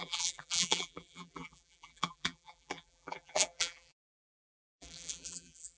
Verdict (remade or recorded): remade